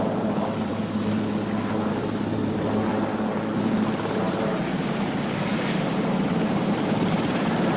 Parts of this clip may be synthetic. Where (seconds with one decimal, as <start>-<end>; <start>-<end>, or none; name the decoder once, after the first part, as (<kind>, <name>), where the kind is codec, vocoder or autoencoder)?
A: 0.0-0.7 (vocoder, BigVGAN v2); 1.7-2.9; 6.5-7.8